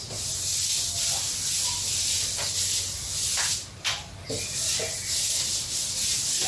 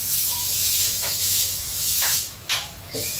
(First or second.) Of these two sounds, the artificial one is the second